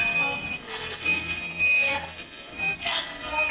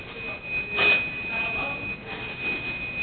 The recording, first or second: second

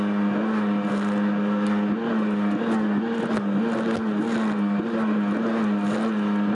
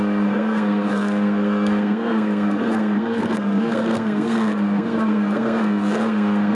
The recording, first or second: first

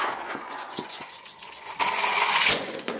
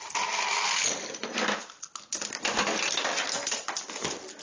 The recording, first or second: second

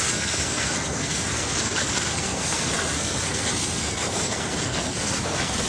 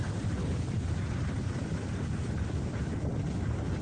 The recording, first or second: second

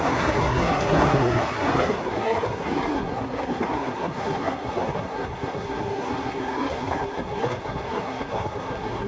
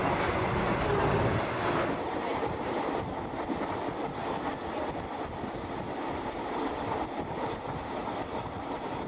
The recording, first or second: second